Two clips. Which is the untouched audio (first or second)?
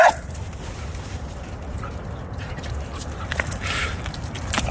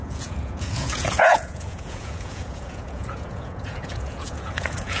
first